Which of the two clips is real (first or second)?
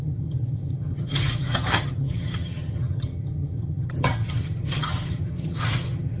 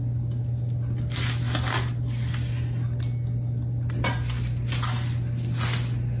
second